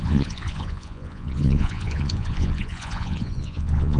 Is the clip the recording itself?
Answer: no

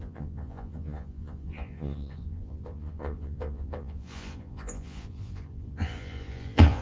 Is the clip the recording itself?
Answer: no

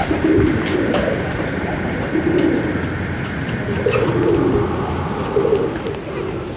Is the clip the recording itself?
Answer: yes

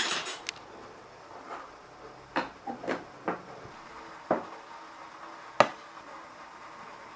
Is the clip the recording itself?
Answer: yes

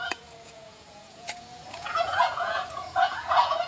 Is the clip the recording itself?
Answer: no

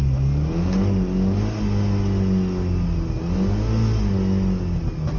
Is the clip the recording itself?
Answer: yes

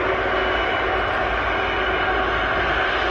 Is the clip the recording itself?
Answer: yes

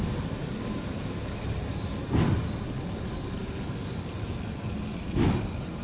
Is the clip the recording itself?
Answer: yes